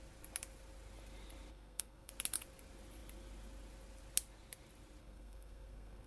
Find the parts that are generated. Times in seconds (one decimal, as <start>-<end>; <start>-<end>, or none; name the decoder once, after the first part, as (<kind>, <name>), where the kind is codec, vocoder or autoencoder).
1.5-2.1 (codec, SNAC); 5.0-6.1